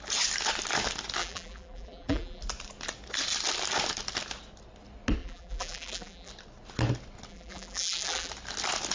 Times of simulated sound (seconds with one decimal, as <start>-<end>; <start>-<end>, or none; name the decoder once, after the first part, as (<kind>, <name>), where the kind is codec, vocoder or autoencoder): 1.2-2.4 (vocoder, BigVGAN v2); 5.2-6.3; 7.3-8.3